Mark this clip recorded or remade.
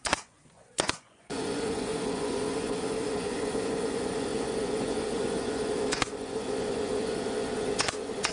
remade